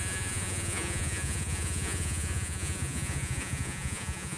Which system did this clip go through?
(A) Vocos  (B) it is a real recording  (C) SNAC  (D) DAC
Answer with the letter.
A